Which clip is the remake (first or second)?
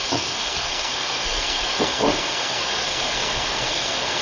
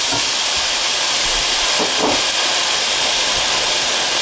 first